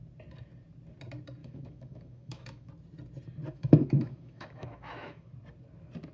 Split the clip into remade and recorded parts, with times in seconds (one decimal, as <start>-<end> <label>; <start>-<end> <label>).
0.0-1.4 recorded; 1.4-2.7 remade; 2.7-3.5 recorded; 3.5-5.3 remade; 5.3-6.1 recorded